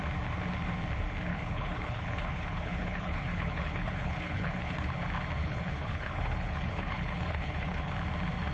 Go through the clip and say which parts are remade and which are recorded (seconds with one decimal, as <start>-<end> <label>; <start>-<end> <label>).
0.0-1.3 recorded; 1.3-4.9 remade; 4.9-5.4 recorded; 5.4-7.9 remade; 7.9-8.5 recorded